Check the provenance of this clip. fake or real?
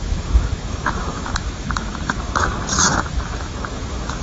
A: fake